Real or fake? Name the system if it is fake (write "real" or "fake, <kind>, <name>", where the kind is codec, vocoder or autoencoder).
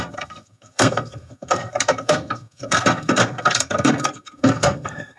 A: fake, codec, SNAC